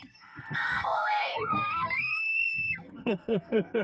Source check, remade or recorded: remade